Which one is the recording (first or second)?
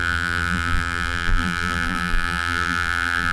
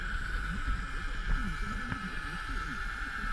second